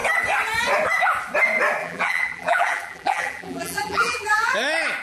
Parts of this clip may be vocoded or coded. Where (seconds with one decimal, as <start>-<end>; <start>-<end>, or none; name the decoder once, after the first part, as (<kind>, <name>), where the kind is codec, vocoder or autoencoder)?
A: 1.8-4.5 (vocoder, BigVGAN v2)